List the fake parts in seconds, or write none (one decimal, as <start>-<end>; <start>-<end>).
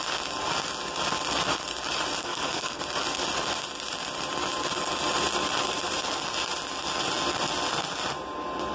2.2-2.8